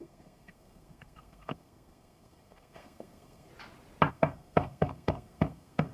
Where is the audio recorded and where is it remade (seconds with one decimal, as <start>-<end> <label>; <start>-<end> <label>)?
0.0-3.5 remade; 3.5-4.1 recorded; 4.1-5.9 remade